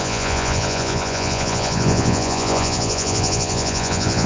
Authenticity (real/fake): fake